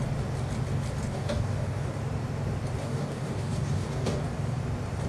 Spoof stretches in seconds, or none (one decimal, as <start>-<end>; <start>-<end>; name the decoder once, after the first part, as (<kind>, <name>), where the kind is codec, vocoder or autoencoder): 1.0-2.0 (codec, DAC); 2.8-4.6